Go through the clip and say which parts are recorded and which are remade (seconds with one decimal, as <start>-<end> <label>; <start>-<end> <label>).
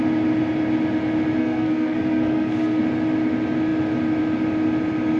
0.0-1.4 recorded; 1.4-2.8 remade; 2.8-5.2 recorded